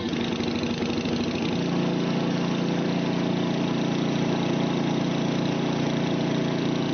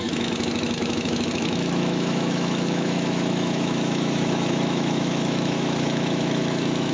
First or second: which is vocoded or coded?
second